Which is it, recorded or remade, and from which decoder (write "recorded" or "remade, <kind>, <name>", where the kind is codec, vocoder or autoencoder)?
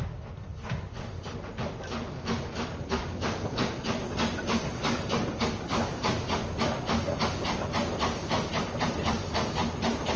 recorded